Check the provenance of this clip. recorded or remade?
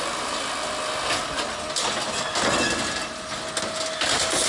recorded